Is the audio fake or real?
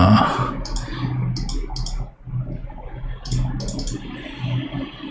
real